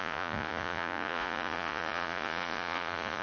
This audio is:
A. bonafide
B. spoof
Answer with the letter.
B